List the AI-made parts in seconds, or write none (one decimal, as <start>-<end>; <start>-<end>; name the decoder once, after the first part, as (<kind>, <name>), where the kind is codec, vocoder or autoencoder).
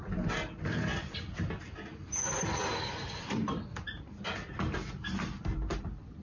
none